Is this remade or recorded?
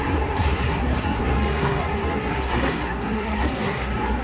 remade